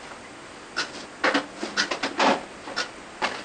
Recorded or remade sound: recorded